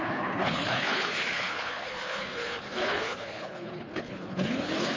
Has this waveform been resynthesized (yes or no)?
yes